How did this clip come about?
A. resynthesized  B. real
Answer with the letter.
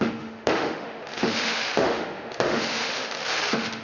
A